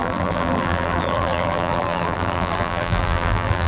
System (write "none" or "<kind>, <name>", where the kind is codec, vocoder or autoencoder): vocoder, BigVGAN v2